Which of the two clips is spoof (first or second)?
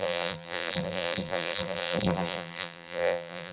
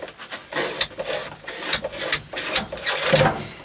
first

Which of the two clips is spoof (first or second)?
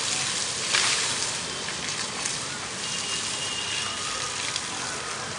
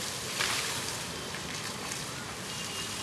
second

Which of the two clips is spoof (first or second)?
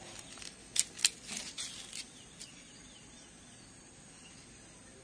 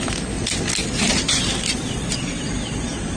second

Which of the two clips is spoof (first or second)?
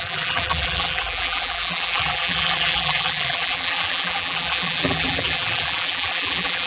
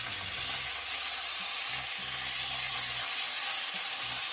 first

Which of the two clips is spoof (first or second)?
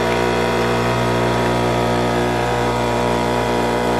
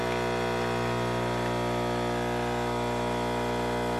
first